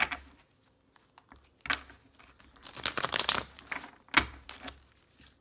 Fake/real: real